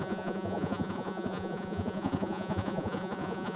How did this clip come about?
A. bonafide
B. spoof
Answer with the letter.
B